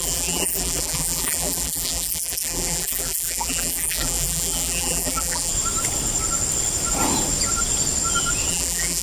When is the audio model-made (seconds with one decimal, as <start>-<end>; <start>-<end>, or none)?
0.0-5.5; 8.5-9.0